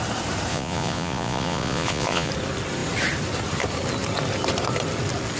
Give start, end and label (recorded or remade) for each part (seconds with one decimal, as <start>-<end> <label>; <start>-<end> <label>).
0.0-0.5 recorded; 0.5-2.3 remade; 2.3-5.4 recorded